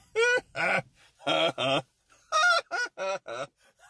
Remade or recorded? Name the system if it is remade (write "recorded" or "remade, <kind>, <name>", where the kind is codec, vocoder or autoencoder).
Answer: recorded